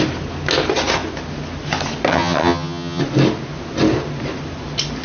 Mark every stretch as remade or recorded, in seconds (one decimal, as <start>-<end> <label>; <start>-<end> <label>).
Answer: 0.0-2.1 recorded; 2.1-3.0 remade; 3.0-5.0 recorded